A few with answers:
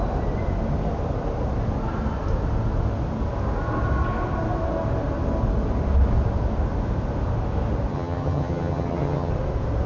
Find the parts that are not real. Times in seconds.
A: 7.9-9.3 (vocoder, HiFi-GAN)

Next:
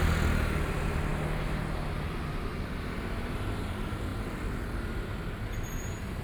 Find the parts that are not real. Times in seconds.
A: none

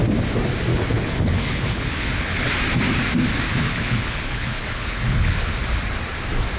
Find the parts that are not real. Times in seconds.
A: 0.7-2.5 (codec, HILCodec); 3.5-5.5

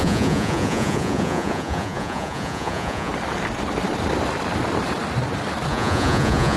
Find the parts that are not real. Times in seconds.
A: 0.0-3.1 (vocoder, Vocos); 5.7-6.6

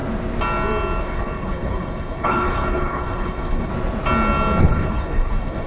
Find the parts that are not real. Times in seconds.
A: 1.0-3.7 (codec, HILCodec); 4.6-5.7

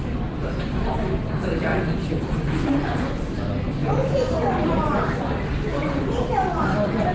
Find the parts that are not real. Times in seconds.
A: 0.0-7.1 (vocoder, BigVGAN v2)

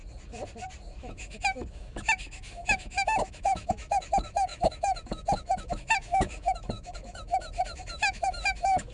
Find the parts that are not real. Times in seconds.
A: 1.0-8.9 (autoencoder, DAC-VAE)